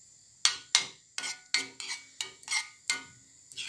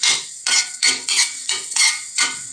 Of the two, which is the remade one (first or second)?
second